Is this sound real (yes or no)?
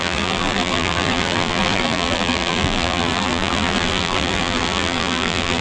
no